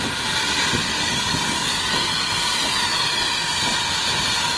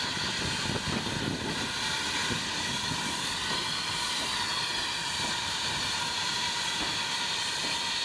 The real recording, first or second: first